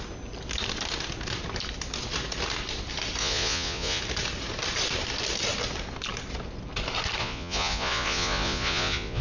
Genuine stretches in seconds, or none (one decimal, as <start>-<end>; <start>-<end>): 0.0-3.2; 4.0-7.2